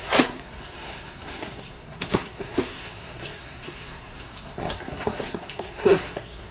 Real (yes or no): no